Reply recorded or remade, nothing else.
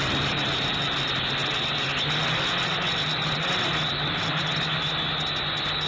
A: recorded